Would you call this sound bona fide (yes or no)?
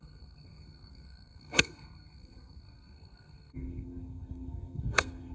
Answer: no